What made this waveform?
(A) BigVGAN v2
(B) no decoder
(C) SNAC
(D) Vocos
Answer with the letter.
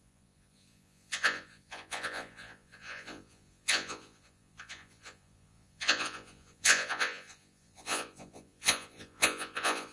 D